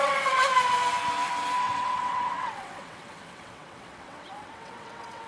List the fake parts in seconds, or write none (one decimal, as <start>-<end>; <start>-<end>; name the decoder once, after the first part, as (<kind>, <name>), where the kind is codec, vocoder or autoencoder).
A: 0.0-0.5 (vocoder, WaveNeXt); 1.6-5.3